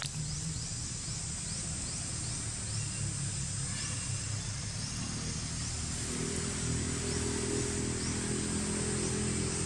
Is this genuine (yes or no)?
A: yes